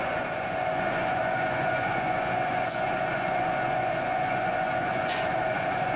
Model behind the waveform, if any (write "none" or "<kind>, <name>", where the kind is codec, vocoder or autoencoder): vocoder, Vocos